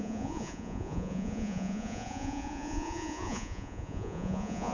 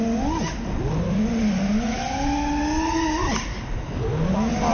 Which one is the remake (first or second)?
first